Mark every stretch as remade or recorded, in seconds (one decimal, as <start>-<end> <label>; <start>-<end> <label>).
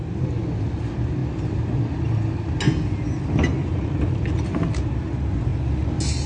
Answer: 0.0-6.3 recorded